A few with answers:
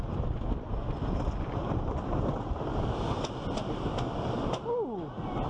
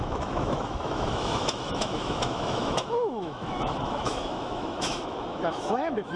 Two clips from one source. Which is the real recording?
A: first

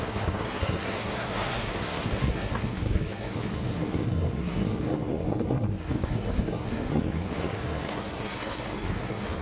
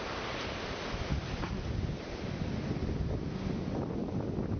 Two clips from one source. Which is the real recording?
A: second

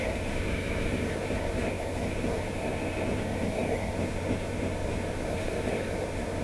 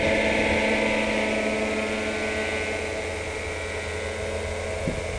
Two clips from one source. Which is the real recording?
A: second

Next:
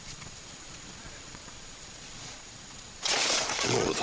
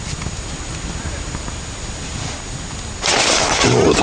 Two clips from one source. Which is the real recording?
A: second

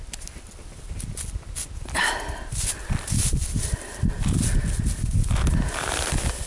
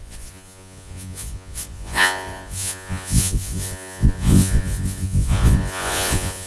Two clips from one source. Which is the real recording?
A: first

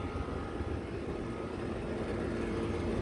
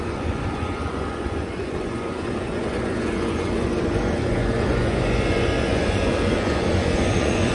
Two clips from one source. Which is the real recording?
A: first